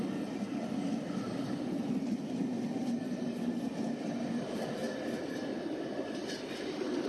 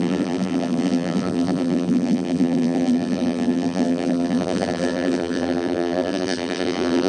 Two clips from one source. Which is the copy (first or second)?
second